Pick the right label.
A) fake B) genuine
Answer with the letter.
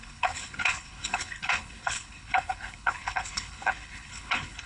A